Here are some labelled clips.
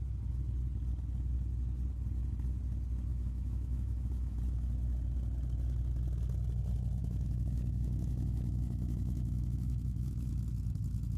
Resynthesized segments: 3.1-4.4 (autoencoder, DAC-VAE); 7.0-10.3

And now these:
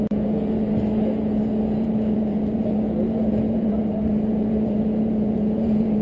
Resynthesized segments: 0.0-6.0 (vocoder, Vocos)

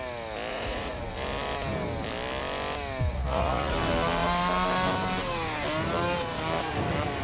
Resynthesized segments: 0.5-1.1 (vocoder, Vocos); 3.1-3.7

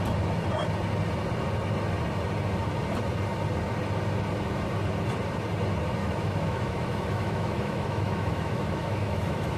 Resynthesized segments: 6.0-9.6 (autoencoder, DAC-VAE)

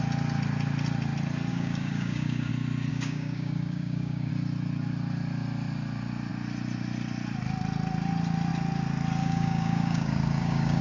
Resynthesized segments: 1.5-2.5 (codec, DAC); 2.9-4.3; 9.2-10.8

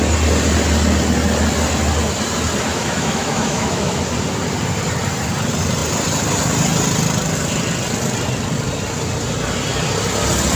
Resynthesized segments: 2.7-4.0 (autoencoder, DAC-VAE)

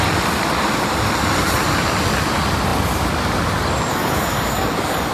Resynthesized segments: 3.9-5.1 (codec, DAC)